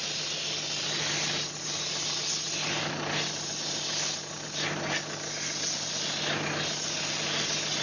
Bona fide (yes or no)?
yes